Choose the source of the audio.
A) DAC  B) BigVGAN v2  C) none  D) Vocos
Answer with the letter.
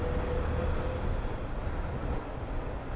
C